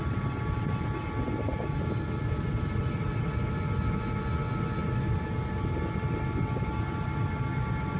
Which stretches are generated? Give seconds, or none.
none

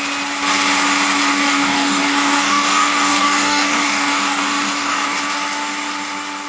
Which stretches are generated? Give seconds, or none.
1.3-5.2 (codec, DAC)

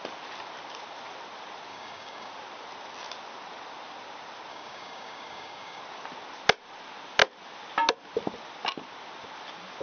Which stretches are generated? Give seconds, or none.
1.7-2.3 (codec, DAC); 4.5-5.8

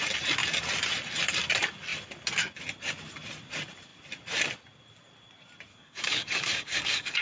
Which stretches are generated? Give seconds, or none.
5.7-7.2 (codec, DAC)

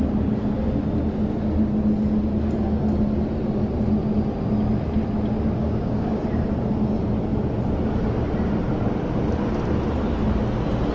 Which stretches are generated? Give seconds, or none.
5.6-6.2 (codec, DAC)

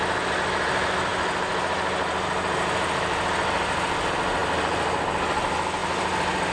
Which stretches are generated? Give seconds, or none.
none

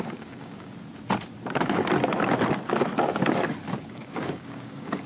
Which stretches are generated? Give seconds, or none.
0.0-0.7 (codec, DAC); 3.8-5.1